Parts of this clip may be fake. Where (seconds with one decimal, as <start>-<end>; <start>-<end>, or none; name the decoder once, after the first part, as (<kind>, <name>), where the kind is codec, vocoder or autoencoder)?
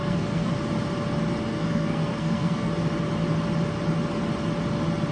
0.0-0.5 (codec, SNAC); 1.5-2.7